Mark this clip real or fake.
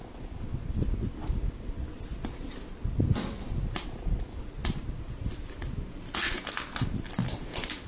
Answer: real